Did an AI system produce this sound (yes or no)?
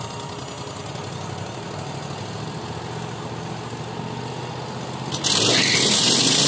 no